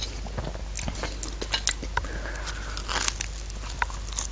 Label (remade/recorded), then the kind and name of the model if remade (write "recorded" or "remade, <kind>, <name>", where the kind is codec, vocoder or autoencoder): recorded